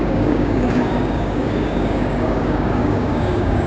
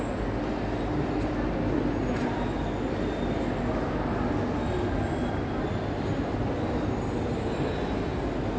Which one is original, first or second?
second